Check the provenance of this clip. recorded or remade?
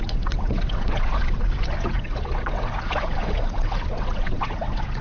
remade